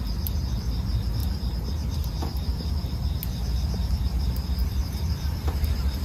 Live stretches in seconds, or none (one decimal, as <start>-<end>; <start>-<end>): 0.0-4.6; 5.6-6.0